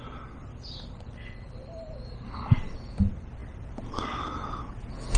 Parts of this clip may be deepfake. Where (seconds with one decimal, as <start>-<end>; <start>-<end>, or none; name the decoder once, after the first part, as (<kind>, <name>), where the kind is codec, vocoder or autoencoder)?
0.4-2.3 (vocoder, BigVGAN v2)